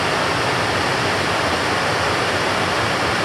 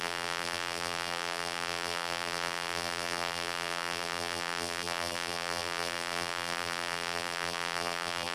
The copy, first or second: second